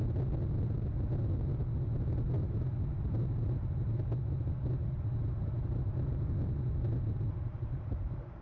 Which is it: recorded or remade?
recorded